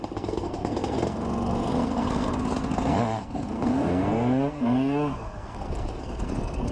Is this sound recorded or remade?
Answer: remade